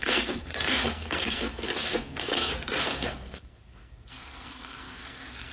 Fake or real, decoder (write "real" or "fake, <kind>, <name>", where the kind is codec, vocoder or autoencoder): fake, codec, SNAC